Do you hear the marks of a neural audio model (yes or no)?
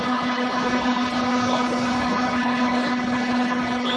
yes